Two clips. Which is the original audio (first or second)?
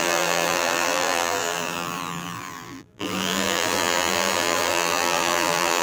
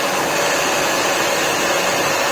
second